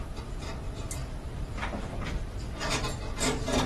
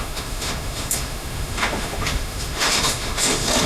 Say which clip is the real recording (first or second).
first